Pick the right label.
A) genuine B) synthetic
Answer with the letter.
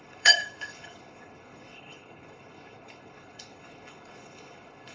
B